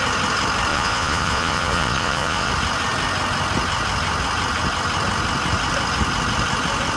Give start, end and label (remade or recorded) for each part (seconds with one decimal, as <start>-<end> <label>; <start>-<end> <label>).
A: 0.0-0.7 recorded; 0.7-2.5 remade; 2.5-7.0 recorded